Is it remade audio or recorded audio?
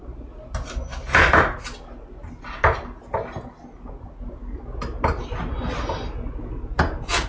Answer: recorded